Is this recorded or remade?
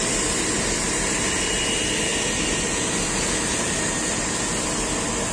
recorded